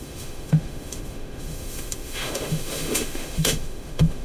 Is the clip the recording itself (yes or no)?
no